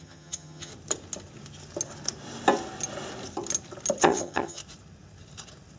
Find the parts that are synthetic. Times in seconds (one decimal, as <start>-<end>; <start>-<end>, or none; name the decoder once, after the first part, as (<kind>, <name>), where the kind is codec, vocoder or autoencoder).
0.0-0.7 (vocoder, HiFi-GAN); 4.0-4.6